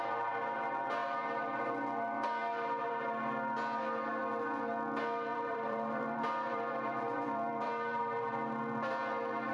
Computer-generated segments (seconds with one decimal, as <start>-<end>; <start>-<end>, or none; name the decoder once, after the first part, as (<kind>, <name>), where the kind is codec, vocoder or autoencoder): 1.0-1.6 (vocoder, BigVGAN v2); 5.3-8.0